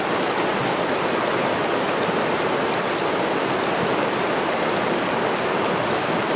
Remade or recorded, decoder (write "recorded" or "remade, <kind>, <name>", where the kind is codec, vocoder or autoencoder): recorded